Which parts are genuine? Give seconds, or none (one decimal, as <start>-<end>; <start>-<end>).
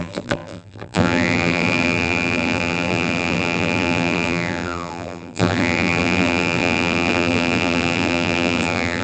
none